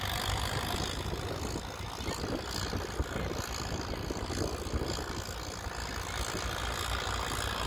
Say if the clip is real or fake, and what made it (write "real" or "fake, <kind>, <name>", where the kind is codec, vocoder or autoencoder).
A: real